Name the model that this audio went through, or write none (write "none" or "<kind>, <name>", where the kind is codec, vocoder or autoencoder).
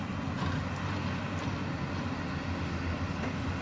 none